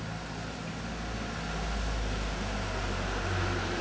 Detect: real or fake real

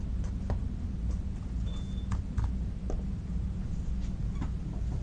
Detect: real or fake real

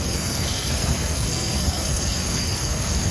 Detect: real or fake fake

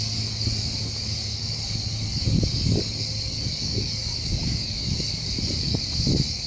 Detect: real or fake fake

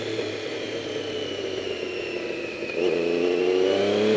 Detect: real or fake fake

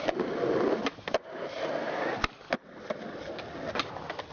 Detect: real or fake real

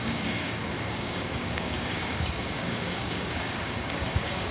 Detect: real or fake fake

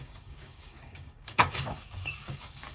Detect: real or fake fake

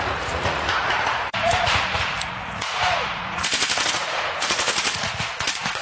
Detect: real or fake fake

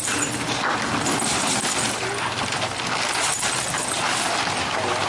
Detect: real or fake fake